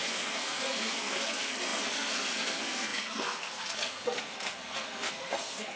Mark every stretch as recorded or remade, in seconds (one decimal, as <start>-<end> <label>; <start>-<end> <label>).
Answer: 0.0-5.8 remade